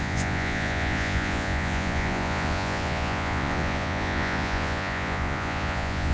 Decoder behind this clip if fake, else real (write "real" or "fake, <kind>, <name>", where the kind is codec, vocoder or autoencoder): fake, vocoder, Vocos